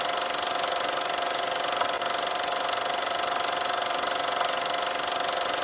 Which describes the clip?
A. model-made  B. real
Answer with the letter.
B